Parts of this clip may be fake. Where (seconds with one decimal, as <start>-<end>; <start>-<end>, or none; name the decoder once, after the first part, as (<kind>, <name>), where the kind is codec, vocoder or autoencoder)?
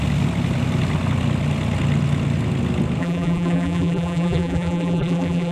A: 3.0-5.5 (vocoder, BigVGAN v2)